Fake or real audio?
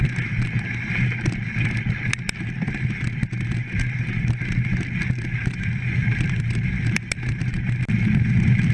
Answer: real